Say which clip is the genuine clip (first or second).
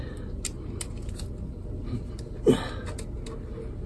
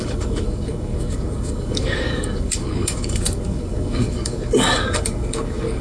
first